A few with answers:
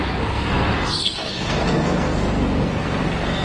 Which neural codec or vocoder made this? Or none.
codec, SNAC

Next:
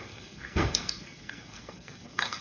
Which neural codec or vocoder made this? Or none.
codec, SNAC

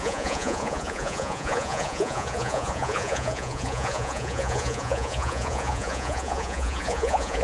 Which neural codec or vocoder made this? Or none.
vocoder, Vocos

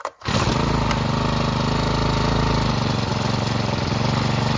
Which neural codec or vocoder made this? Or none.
none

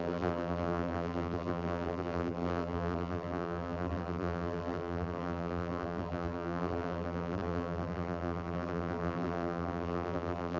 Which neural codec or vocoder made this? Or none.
vocoder, BigVGAN v2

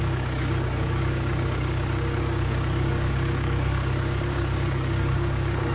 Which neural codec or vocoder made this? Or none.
codec, DAC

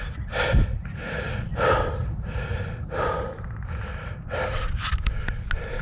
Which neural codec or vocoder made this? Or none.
none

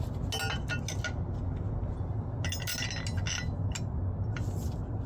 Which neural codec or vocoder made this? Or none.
none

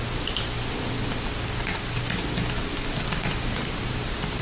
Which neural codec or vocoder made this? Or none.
vocoder, BigVGAN v2